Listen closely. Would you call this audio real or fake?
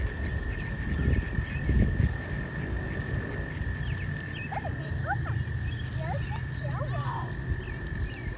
real